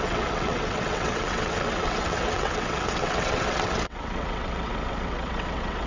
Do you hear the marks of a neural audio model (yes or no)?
yes